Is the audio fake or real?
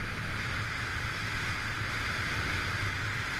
real